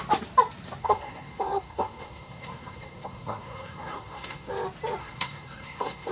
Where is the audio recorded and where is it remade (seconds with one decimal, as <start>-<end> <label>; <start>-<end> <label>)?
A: 0.0-0.8 recorded; 0.8-4.5 remade; 4.5-5.0 recorded; 5.0-6.1 remade